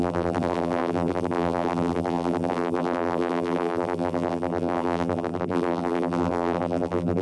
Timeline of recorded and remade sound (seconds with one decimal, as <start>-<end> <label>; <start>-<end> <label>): 0.0-7.2 remade